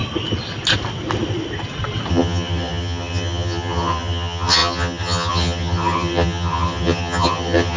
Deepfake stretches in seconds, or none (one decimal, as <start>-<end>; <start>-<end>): 2.1-7.8